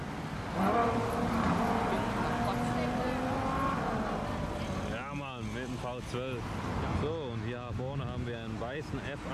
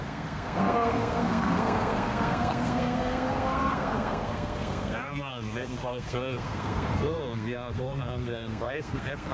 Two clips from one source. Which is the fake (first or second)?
second